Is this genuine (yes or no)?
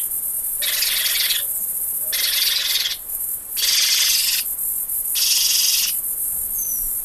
yes